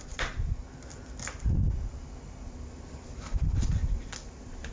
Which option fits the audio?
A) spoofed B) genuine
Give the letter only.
B